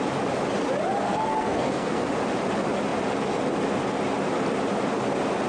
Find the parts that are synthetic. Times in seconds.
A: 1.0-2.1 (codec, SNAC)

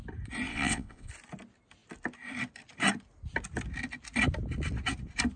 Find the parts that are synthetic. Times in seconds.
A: 0.5-1.1 (vocoder, WaveNeXt)

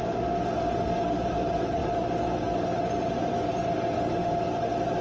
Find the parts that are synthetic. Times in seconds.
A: none

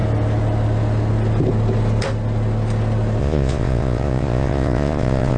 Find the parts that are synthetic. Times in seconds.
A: 3.2-5.4 (vocoder, Vocos)

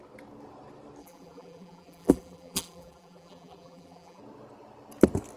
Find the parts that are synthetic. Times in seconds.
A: 1.0-4.2 (vocoder, BigVGAN v2)